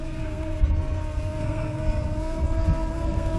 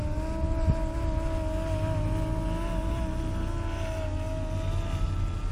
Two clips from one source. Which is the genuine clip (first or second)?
second